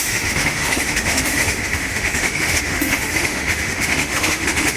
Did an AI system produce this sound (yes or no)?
yes